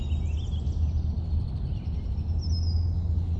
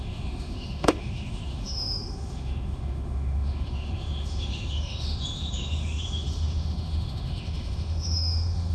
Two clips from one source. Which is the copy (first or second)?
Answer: second